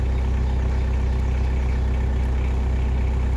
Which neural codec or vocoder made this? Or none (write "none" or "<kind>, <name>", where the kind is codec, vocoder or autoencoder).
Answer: none